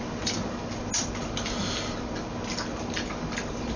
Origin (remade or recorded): recorded